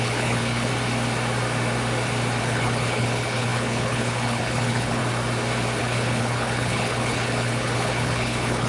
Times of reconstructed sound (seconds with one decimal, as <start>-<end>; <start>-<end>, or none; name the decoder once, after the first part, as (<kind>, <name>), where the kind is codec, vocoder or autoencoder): 0.0-0.7 (codec, HILCodec); 2.4-5.0; 5.8-8.7